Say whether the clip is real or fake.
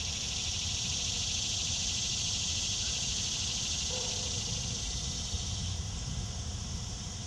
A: fake